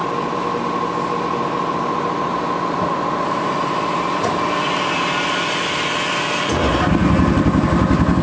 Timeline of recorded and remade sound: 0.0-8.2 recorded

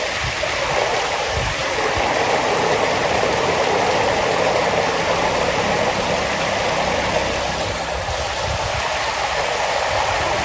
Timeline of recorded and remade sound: 0.0-10.4 recorded

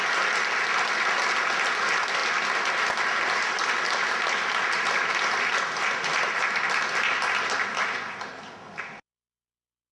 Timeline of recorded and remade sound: 0.0-9.9 recorded

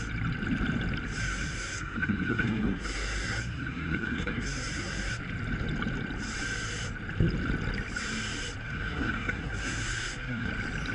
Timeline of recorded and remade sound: 0.0-1.2 recorded; 1.2-5.2 remade; 5.2-8.6 recorded; 8.6-10.5 remade; 10.5-10.9 recorded

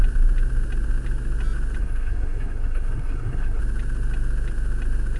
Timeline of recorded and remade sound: 0.0-1.8 recorded; 1.8-3.6 remade; 3.6-5.2 recorded

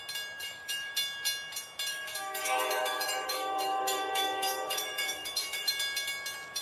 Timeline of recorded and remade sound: 0.0-0.4 recorded; 0.4-0.9 remade; 0.9-1.9 recorded; 1.9-5.7 remade; 5.7-6.6 recorded

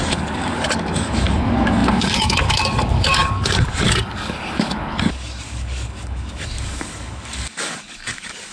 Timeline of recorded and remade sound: 0.0-8.5 remade

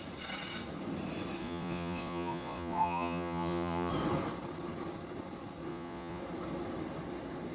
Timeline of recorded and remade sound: 0.0-1.4 recorded; 1.4-3.9 remade; 3.9-5.7 recorded; 5.7-6.2 remade; 6.2-7.5 recorded